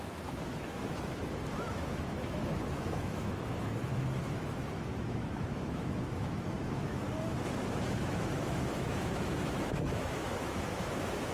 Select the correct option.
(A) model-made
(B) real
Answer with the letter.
A